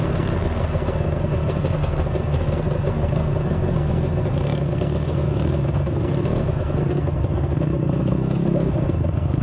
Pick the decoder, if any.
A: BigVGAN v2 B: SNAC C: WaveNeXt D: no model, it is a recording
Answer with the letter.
B